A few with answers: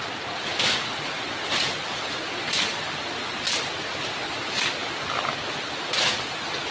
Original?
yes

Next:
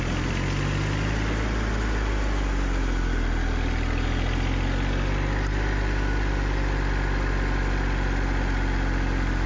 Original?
yes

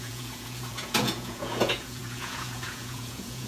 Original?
no